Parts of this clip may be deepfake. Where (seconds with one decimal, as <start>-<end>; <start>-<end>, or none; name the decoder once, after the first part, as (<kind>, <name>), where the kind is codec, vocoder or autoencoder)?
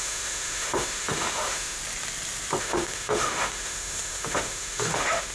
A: 0.0-1.8 (autoencoder, DAC-VAE); 2.6-5.3